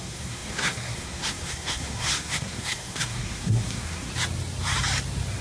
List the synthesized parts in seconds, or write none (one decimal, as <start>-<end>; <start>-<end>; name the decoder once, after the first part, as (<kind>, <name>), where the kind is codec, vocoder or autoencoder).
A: 0.0-4.1 (codec, SNAC)